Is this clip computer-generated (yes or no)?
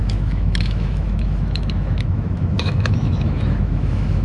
yes